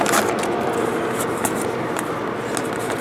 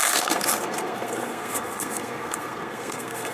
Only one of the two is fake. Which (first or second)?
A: second